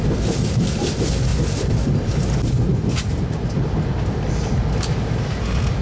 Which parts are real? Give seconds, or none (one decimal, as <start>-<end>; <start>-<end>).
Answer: 0.0-5.8